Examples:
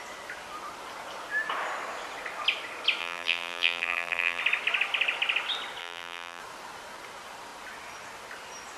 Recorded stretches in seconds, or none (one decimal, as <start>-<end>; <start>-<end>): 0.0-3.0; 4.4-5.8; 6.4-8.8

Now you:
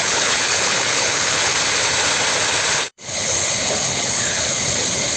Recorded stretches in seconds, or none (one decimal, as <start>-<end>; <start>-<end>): 1.5-2.7

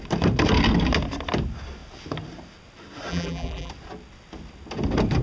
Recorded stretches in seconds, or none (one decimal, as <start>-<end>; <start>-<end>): 0.0-3.1; 3.7-5.2